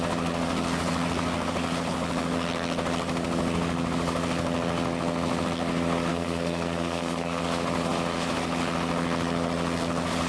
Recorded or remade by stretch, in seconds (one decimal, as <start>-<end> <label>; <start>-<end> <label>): 0.0-6.1 recorded; 6.1-7.4 remade; 7.4-10.3 recorded